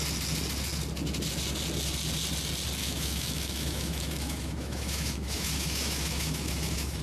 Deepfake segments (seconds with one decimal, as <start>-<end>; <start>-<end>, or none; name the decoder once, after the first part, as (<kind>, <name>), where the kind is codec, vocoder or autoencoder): 2.8-7.0 (autoencoder, DAC-VAE)